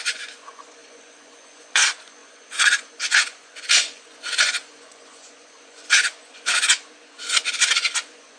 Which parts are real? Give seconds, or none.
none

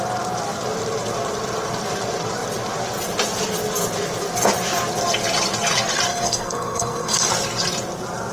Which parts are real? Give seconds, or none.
0.0-6.1; 7.3-8.3

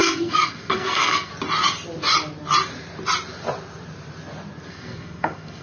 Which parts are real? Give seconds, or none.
1.3-4.7